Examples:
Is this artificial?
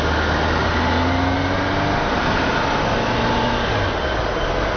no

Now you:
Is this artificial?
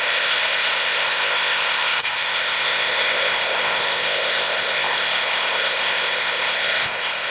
yes